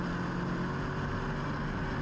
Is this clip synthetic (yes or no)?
no